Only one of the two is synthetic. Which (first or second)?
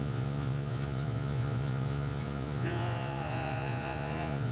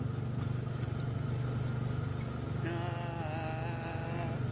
first